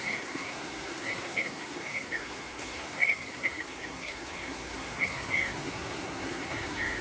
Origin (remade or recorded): remade